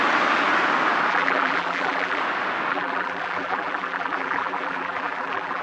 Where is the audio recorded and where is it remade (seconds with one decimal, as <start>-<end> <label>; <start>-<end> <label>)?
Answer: 0.0-1.1 recorded; 1.1-2.2 remade; 2.2-2.7 recorded; 2.7-5.6 remade